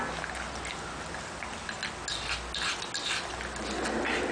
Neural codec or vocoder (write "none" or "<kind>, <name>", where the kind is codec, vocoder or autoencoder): none